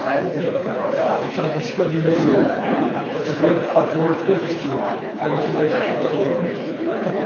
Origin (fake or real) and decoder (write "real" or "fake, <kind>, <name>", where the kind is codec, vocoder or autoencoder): fake, codec, HILCodec